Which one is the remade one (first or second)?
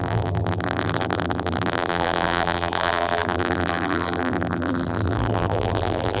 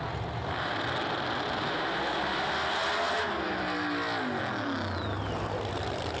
first